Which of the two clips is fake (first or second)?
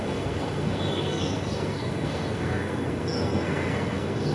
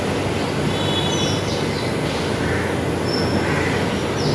first